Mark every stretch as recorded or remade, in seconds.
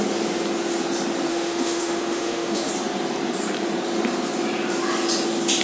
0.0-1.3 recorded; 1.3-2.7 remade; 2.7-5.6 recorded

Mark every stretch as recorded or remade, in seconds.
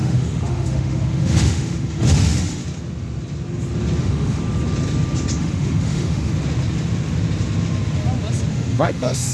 0.0-2.6 remade; 2.6-4.0 recorded; 4.0-4.4 remade; 4.4-5.4 recorded; 5.4-6.3 remade; 6.3-8.5 recorded; 8.5-9.3 remade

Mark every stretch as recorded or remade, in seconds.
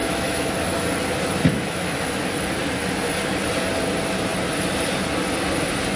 0.0-0.5 remade; 0.5-1.5 recorded; 1.5-2.3 remade; 2.3-6.0 recorded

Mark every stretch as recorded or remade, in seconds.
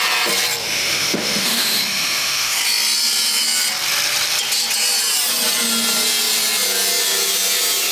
0.0-0.6 recorded; 0.6-2.6 remade; 2.6-7.9 recorded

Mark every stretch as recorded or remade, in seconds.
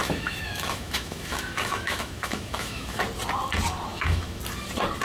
0.0-3.0 remade; 3.0-3.9 recorded; 3.9-4.4 remade; 4.4-5.0 recorded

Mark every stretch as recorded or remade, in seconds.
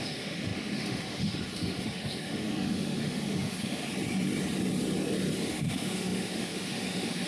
0.0-3.8 remade; 3.8-5.5 recorded; 5.5-7.3 remade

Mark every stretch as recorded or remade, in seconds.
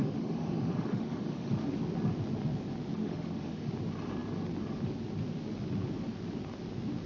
0.0-1.5 remade; 1.5-3.0 recorded; 3.0-3.7 remade; 3.7-7.1 recorded